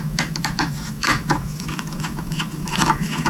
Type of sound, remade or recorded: remade